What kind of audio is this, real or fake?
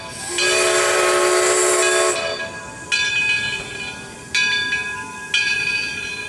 real